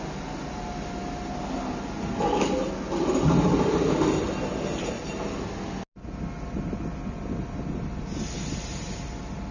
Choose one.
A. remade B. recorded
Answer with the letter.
B